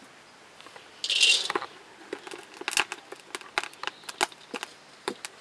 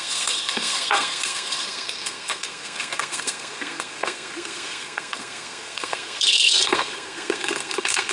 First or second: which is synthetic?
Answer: second